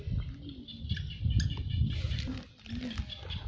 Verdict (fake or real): real